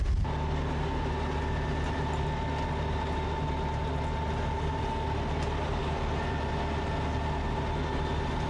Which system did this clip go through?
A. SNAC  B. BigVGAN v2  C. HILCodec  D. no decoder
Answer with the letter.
D